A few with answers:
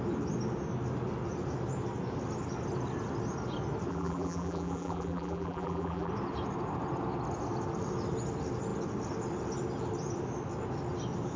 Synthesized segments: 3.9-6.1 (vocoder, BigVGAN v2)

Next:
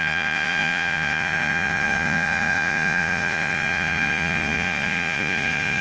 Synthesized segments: 0.0-5.8 (vocoder, Vocos)

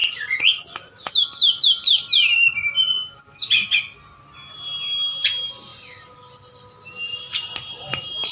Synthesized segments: 0.0-1.1 (vocoder, Vocos)

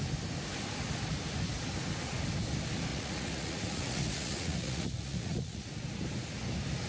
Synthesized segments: 2.9-5.7 (vocoder, Vocos)

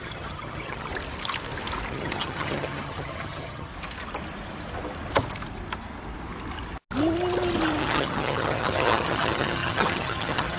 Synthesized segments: 0.0-0.9 (vocoder, HiFi-GAN); 1.9-3.7; 7.8-10.6